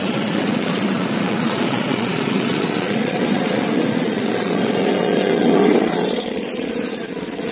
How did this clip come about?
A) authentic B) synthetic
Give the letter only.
B